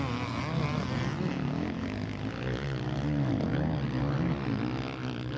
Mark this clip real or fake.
real